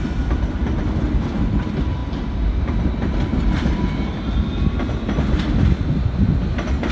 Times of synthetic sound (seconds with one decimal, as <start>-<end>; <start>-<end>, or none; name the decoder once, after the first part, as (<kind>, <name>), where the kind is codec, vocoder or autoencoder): none